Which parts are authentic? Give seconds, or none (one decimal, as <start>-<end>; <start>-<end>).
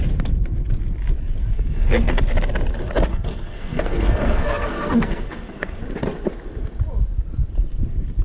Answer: 0.0-1.5; 2.2-3.1; 5.8-8.2